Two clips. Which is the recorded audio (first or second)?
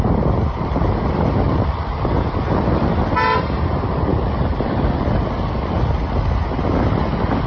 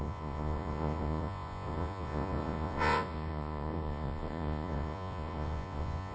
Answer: first